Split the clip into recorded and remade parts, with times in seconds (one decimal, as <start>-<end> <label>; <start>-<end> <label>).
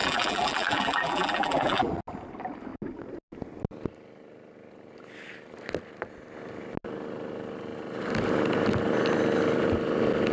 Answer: 0.0-1.9 remade; 1.9-10.3 recorded